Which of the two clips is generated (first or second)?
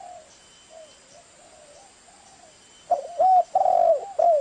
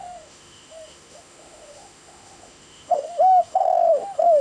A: second